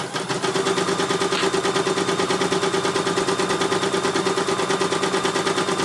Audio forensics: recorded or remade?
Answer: recorded